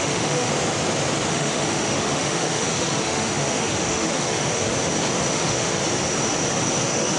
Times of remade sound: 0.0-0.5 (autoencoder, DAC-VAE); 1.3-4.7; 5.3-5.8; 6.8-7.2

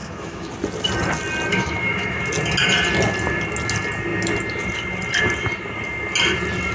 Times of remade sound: 0.0-0.5 (autoencoder, DAC-VAE); 1.5-2.2

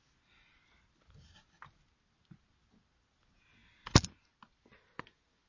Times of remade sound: none

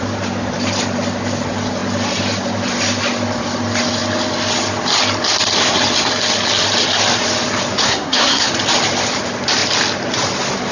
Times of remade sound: 7.8-8.5 (codec, SNAC)

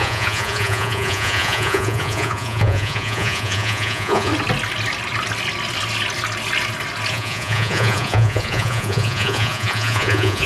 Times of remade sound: 0.0-4.3 (vocoder, Vocos); 7.1-10.5

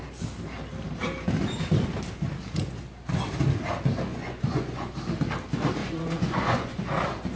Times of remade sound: 4.1-4.9 (vocoder, Vocos); 5.8-6.8